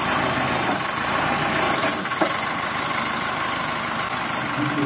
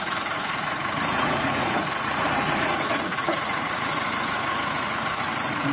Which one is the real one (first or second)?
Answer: first